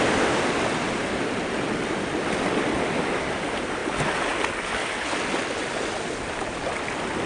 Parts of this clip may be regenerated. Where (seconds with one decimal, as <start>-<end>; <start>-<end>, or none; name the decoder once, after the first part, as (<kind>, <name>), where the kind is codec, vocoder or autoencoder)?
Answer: none